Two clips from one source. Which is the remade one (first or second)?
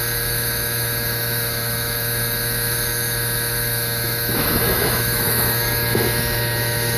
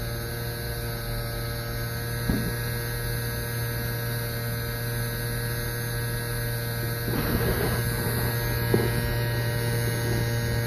first